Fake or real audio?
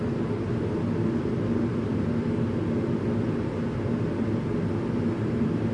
real